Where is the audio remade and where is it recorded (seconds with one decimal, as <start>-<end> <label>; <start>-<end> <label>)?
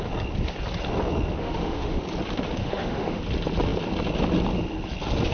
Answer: 0.0-1.4 recorded; 1.4-2.0 remade; 2.0-2.6 recorded; 2.6-3.2 remade; 3.2-5.3 recorded